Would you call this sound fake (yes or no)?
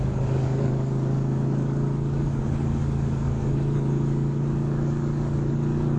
yes